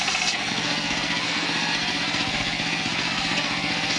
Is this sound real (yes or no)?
no